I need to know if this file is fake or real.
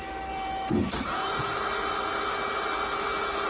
real